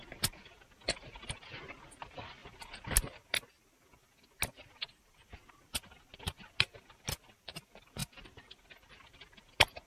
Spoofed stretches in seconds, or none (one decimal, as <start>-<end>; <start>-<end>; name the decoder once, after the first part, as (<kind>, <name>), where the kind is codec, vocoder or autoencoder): none

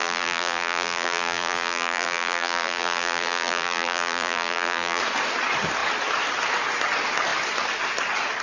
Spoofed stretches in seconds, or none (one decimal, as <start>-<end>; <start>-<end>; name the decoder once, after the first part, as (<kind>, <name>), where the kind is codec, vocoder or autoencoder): 0.0-5.0 (vocoder, BigVGAN v2)